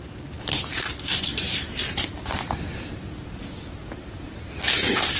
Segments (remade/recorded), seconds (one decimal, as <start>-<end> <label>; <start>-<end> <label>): 0.0-5.2 remade